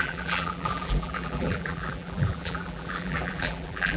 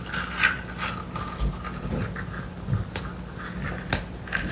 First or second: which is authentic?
second